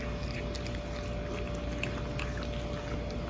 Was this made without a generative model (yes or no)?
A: yes